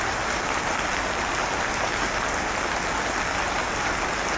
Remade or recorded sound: recorded